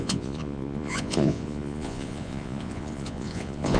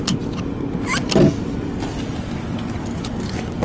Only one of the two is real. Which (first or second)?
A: second